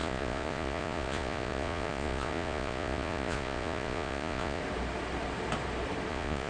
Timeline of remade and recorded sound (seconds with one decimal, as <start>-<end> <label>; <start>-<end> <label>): 0.0-4.6 remade; 4.6-6.1 recorded; 6.1-6.5 remade